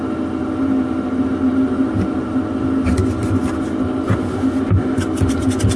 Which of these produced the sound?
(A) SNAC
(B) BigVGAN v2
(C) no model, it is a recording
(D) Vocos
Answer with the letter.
C